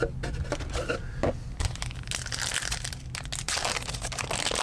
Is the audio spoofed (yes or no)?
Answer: no